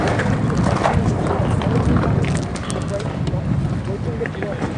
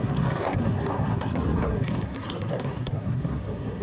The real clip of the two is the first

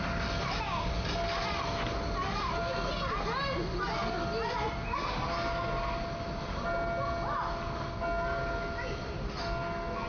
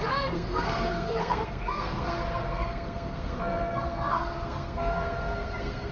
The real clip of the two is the first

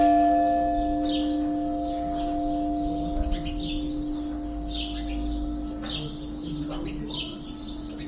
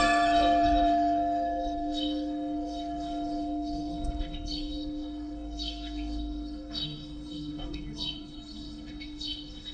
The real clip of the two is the first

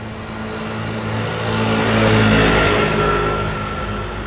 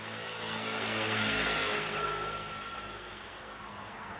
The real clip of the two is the first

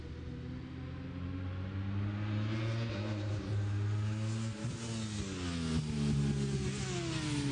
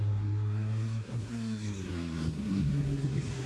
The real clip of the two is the first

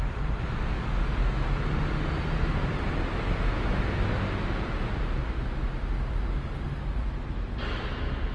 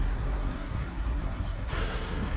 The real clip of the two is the first